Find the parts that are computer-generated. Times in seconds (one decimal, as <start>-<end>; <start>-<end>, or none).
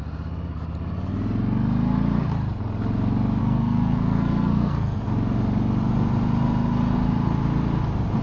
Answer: 3.4-5.0